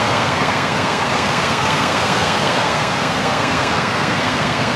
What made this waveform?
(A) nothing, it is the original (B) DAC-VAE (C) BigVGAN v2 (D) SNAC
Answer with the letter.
D